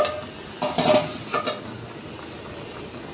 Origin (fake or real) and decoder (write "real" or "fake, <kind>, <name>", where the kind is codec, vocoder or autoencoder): real